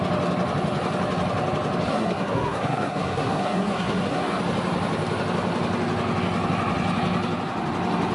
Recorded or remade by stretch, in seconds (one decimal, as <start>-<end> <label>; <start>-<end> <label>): 0.0-1.9 recorded; 1.9-4.4 remade; 4.4-8.1 recorded